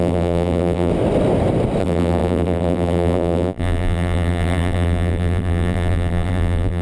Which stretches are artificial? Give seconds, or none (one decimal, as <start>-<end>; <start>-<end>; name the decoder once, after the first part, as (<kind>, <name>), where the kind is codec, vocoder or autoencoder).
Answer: 0.0-0.9 (vocoder, BigVGAN v2); 1.8-6.8